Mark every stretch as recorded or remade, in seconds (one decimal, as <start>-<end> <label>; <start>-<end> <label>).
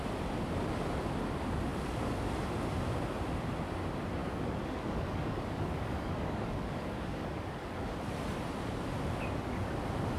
0.0-4.2 recorded; 4.2-7.9 remade; 7.9-10.2 recorded